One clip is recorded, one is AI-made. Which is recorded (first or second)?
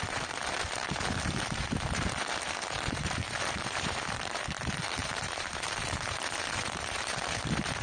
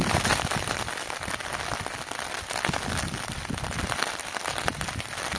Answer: second